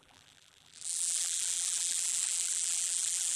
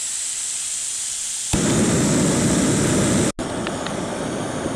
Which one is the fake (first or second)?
first